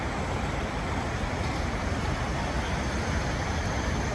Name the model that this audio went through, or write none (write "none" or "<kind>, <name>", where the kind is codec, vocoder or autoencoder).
none